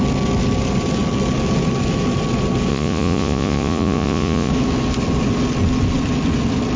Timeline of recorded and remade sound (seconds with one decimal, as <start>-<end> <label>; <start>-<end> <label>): 0.0-2.7 recorded; 2.7-4.5 remade; 4.5-6.8 recorded